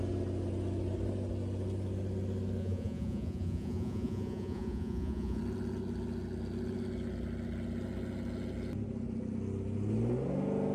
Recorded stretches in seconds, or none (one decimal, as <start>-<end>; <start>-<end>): 0.0-2.6; 5.4-10.7

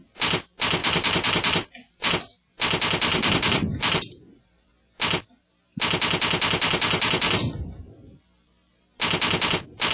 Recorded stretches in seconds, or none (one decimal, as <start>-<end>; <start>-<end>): 0.0-0.8; 2.1-3.1; 4.7-9.9